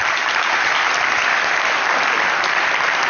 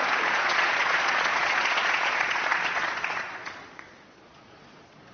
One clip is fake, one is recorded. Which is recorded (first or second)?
first